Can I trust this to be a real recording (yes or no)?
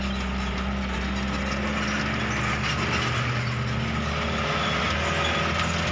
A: yes